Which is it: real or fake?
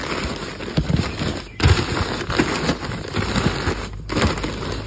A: real